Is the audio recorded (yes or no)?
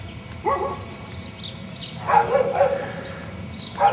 yes